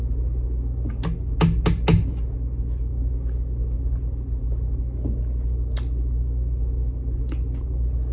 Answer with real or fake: real